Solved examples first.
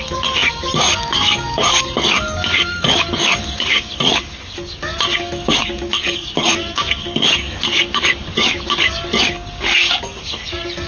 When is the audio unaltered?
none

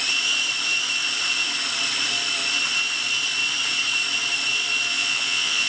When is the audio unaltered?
0.0-4.9

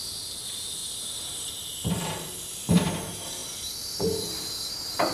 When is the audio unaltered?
0.0-0.8; 2.3-3.4

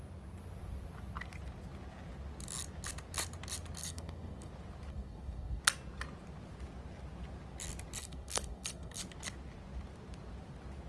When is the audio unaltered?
0.0-3.8; 4.5-4.9; 5.6-8.0; 9.0-10.9

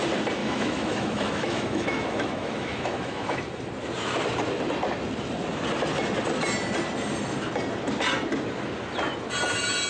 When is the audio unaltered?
0.0-0.4; 3.4-9.9

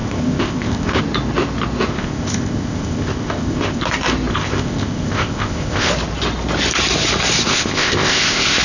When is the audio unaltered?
1.0-1.9; 3.8-4.3; 5.9-7.5